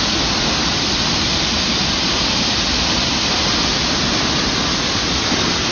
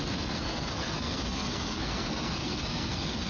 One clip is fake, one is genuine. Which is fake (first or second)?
second